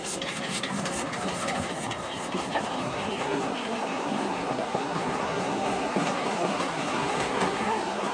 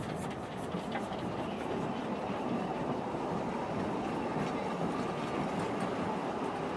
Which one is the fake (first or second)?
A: first